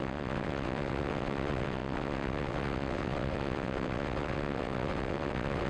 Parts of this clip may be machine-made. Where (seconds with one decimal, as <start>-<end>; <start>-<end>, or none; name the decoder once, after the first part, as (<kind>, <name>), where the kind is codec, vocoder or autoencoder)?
0.0-5.7 (vocoder, WaveNeXt)